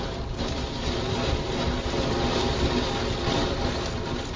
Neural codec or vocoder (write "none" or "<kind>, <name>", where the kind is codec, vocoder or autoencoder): none